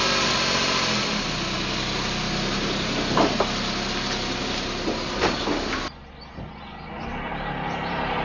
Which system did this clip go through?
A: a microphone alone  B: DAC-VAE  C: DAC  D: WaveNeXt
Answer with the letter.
A